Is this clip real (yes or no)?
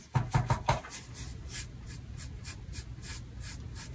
yes